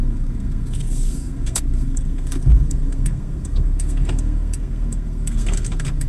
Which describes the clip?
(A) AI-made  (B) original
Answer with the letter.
A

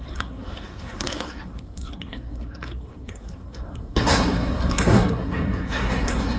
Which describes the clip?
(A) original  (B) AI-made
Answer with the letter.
B